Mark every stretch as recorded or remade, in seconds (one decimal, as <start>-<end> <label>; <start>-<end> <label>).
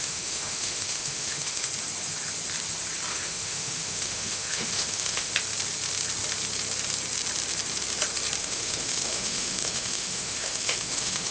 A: 0.0-1.7 remade; 1.7-3.1 recorded; 3.1-5.3 remade; 5.3-8.4 recorded; 8.4-11.3 remade